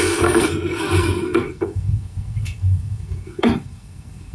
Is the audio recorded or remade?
remade